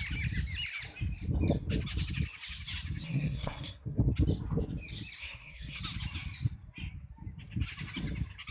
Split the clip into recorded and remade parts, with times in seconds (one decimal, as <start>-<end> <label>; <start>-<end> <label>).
0.0-3.0 recorded; 3.0-4.0 remade; 4.0-5.2 recorded; 5.2-5.8 remade; 5.8-8.5 recorded